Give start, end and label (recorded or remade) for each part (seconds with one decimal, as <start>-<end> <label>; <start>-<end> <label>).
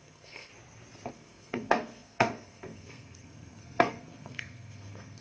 0.0-0.5 remade; 0.5-1.1 recorded; 1.1-5.2 remade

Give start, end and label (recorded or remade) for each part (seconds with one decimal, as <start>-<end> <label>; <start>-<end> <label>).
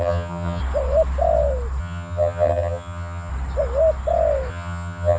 0.0-0.6 remade; 0.6-1.8 recorded; 1.8-3.3 remade; 3.3-4.5 recorded; 4.5-5.2 remade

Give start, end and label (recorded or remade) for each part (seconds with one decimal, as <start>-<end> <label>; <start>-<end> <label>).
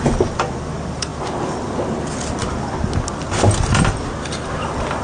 0.0-5.0 recorded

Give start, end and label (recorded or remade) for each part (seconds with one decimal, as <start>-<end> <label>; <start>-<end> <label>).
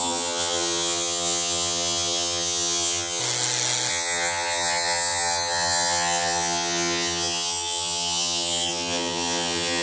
0.0-3.2 remade; 3.2-3.9 recorded; 3.9-9.8 remade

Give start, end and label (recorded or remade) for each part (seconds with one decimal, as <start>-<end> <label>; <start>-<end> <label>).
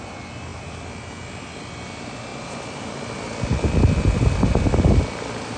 0.0-5.6 recorded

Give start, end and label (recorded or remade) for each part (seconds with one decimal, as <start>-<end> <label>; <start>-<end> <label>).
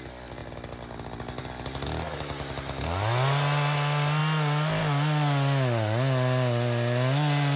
0.0-7.6 recorded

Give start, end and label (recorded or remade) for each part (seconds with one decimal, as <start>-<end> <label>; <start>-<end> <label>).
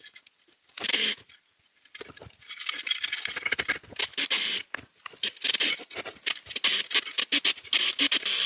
0.0-8.5 recorded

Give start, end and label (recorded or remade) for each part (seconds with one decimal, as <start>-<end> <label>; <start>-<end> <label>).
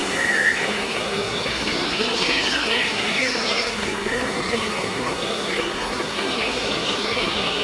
0.0-7.6 remade